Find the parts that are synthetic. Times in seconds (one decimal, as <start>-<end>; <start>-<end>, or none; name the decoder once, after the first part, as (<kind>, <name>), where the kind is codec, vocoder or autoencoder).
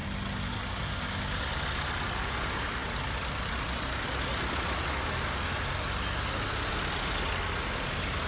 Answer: none